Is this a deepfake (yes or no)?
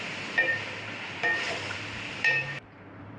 yes